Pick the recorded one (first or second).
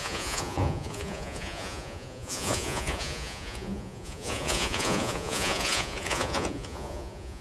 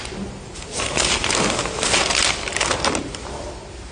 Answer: second